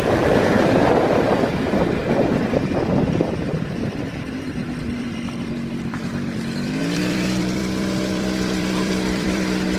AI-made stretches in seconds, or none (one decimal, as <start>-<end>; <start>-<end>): 0.0-9.8